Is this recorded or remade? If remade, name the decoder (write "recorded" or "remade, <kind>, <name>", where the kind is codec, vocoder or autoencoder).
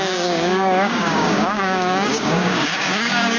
remade, codec, DAC